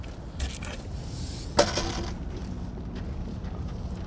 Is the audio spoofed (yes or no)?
no